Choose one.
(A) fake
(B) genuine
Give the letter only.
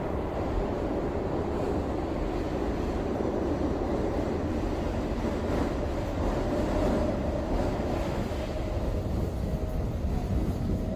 B